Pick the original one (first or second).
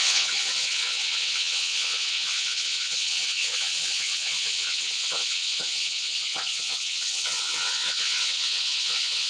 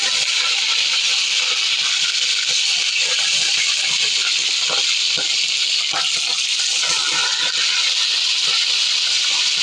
second